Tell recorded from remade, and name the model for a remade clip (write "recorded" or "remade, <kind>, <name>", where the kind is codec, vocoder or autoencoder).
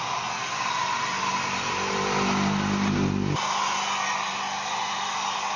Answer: recorded